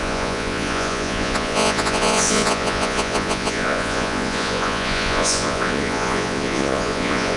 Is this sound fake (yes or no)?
yes